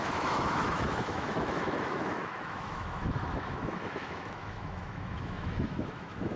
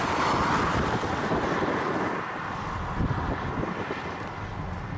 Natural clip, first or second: second